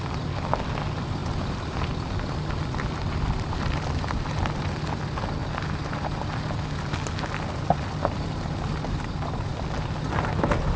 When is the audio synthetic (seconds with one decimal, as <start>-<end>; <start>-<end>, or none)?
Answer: none